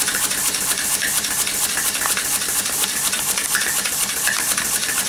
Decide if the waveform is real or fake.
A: fake